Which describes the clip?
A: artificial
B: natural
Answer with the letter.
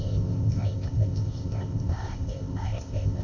A